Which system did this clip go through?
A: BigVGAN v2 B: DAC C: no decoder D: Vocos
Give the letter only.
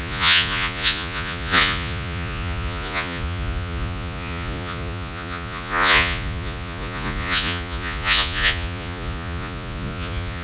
D